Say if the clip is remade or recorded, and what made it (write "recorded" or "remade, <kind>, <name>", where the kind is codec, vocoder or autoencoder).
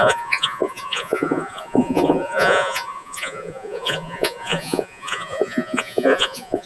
remade, vocoder, Vocos